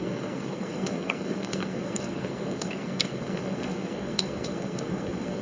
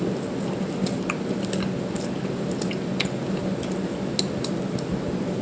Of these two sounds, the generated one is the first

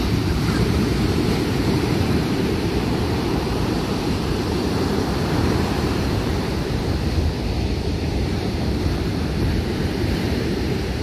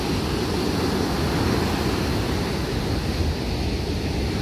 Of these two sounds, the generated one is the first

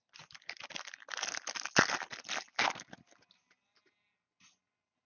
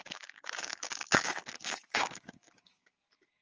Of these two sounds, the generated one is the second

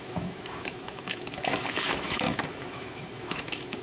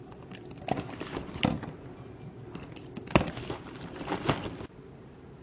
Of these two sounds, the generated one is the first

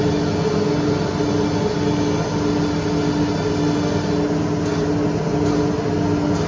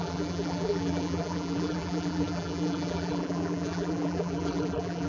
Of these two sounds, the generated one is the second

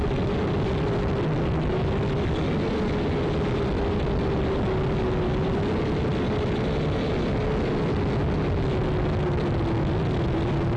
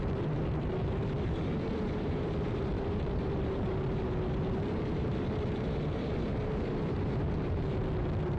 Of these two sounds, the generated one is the second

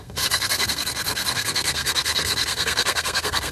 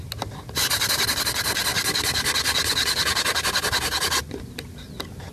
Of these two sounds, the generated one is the first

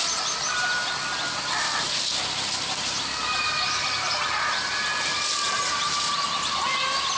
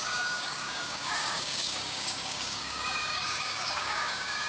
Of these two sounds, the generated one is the second